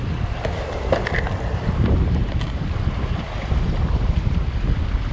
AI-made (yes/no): no